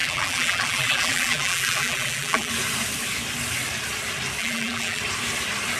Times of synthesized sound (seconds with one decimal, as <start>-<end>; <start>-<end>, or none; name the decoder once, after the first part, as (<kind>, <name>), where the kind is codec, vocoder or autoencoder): 0.0-2.5 (vocoder, BigVGAN v2); 4.4-5.0